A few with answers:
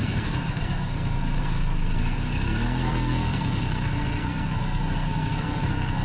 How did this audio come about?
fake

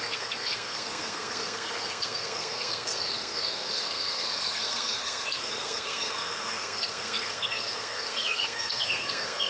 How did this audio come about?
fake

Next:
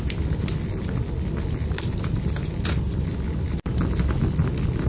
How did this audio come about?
real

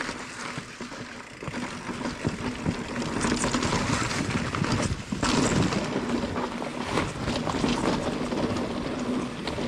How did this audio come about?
real